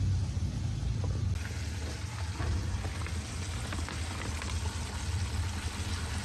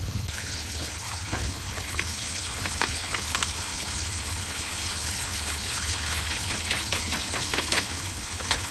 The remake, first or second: second